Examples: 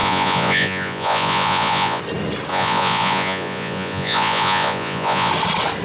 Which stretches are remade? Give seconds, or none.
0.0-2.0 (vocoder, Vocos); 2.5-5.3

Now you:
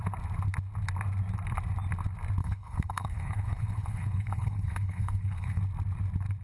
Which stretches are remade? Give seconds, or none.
2.4-5.6 (codec, HILCodec)

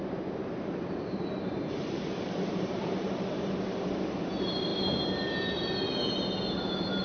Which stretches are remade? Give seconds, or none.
0.0-3.9 (vocoder, BigVGAN v2)

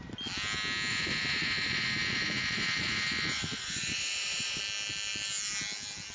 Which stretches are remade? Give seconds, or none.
0.9-4.6 (vocoder, Vocos)

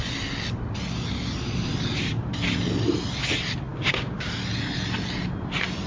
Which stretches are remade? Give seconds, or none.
3.7-4.3 (codec, DAC)

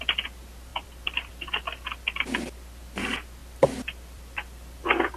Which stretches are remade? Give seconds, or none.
0.7-1.3 (vocoder, BigVGAN v2); 3.4-5.2

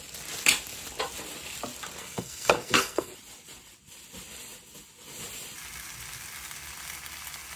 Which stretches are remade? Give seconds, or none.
2.0-3.1 (codec, SNAC)

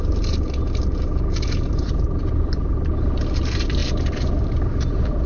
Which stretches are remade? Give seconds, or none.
0.0-5.3 (vocoder, BigVGAN v2)